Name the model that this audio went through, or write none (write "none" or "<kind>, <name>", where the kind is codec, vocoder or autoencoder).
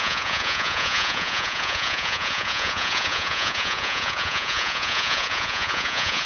vocoder, Vocos